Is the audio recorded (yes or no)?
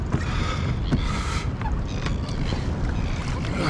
yes